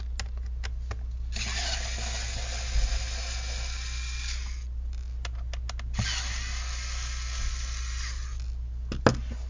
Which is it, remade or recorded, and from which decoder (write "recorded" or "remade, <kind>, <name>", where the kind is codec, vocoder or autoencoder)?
recorded